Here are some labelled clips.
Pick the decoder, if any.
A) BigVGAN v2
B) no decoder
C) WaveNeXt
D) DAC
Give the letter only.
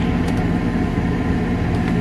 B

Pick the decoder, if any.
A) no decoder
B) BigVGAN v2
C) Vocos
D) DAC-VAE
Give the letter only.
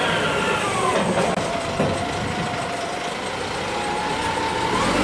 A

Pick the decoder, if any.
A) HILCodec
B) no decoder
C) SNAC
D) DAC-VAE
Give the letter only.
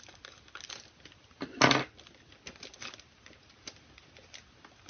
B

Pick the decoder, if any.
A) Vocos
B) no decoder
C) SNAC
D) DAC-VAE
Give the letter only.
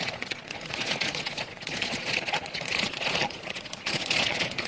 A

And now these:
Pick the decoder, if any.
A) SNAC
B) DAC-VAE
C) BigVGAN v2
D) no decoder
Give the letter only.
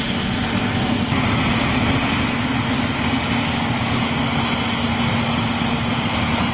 D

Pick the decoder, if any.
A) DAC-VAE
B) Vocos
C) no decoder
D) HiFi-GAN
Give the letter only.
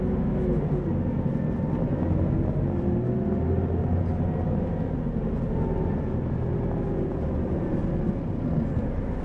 C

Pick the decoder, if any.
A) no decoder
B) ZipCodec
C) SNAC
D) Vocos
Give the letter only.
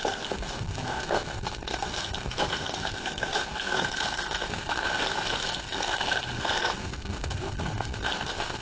C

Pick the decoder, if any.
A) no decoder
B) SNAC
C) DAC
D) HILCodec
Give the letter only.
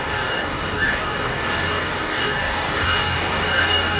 C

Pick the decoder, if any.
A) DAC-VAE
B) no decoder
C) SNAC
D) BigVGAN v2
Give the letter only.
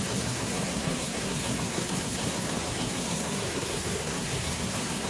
C